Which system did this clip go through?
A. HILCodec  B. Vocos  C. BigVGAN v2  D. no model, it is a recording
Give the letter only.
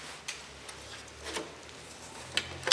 D